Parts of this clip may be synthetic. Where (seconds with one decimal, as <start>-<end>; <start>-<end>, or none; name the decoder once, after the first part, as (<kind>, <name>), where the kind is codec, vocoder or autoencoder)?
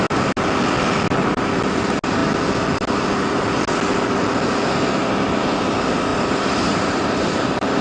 6.1-7.8 (vocoder, BigVGAN v2)